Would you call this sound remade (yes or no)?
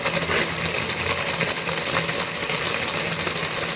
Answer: no